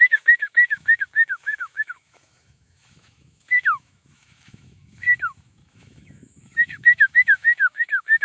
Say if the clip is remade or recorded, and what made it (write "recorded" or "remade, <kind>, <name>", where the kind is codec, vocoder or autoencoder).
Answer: remade, autoencoder, DAC-VAE